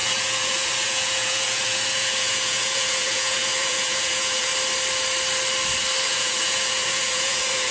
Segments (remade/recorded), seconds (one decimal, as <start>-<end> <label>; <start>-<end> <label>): 0.0-4.5 remade; 4.5-6.0 recorded; 6.0-7.7 remade